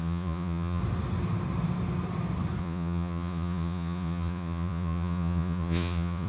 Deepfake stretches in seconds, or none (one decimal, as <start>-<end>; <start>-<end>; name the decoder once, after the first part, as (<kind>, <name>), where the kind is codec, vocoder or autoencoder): 0.0-0.8 (vocoder, Vocos); 2.6-6.3